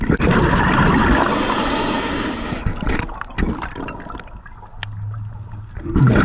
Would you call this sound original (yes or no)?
yes